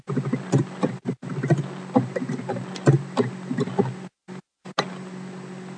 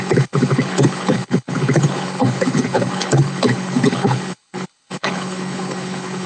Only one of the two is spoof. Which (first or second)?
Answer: second